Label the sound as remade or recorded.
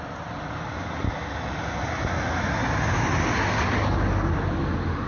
recorded